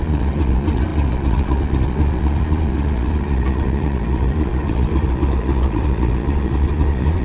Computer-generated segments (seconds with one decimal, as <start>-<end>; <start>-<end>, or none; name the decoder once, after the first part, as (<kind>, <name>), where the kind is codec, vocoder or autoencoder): 0.0-7.2 (vocoder, Vocos)